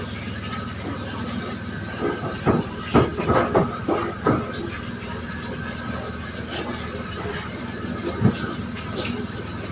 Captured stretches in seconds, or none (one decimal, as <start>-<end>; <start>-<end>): 0.0-9.7